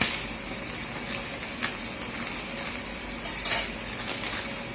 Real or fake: real